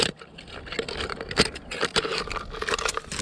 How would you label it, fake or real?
real